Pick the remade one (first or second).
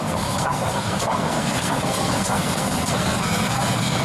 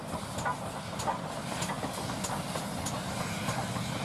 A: first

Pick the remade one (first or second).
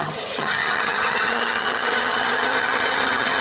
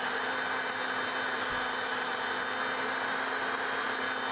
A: first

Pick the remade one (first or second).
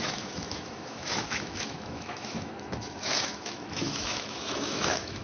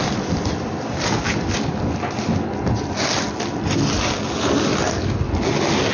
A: first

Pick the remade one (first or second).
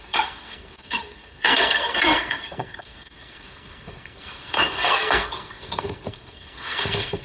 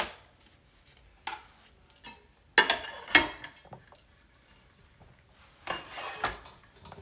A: first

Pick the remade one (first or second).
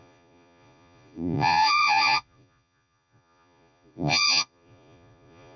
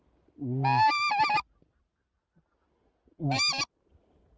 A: first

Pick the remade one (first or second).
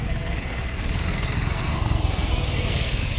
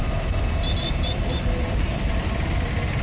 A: first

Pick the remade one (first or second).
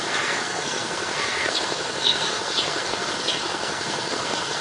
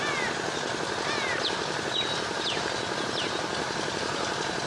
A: first